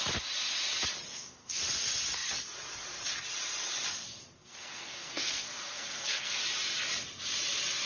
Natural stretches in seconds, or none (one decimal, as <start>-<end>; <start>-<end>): 0.0-1.1; 1.6-4.4; 6.4-7.9